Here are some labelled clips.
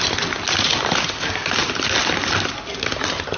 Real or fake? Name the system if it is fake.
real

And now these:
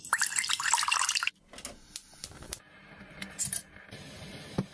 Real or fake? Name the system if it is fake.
real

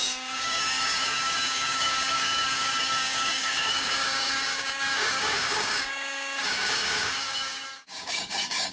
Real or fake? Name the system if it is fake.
fake, codec, DAC